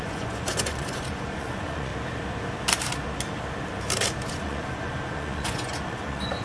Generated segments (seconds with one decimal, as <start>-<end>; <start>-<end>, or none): 0.0-1.9; 4.3-6.4